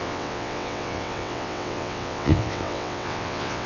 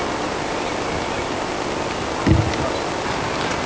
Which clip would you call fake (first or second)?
first